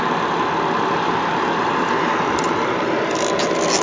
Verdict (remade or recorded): recorded